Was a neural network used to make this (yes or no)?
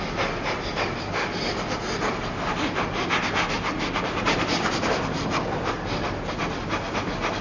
no